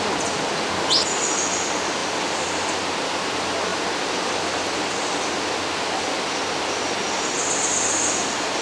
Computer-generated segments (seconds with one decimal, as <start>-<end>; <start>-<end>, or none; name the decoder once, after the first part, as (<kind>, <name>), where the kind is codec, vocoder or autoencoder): none